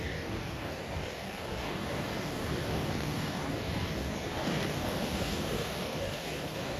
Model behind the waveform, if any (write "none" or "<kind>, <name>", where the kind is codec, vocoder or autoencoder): codec, DAC